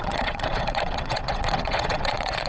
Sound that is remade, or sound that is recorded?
remade